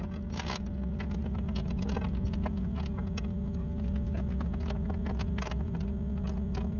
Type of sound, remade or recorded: recorded